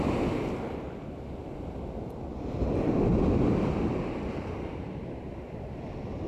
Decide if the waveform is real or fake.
real